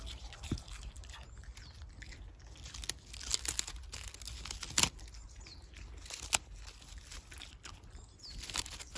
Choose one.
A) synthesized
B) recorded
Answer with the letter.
B